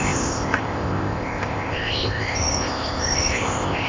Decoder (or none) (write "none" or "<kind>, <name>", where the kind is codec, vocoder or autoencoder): codec, ZipCodec